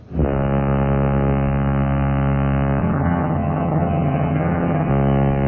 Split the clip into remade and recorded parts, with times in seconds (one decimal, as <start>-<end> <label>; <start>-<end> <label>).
0.0-2.8 recorded; 2.8-4.9 remade; 4.9-5.5 recorded